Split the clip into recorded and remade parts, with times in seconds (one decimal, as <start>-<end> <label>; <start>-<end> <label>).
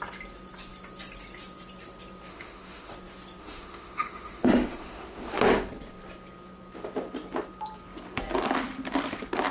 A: 0.0-2.3 recorded; 2.3-2.9 remade; 2.9-3.4 recorded; 3.4-5.4 remade; 5.4-9.5 recorded